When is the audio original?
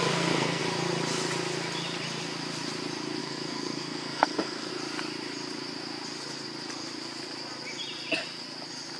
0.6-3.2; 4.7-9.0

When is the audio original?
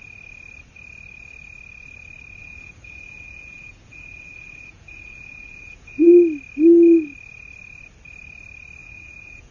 0.0-2.4; 6.1-8.8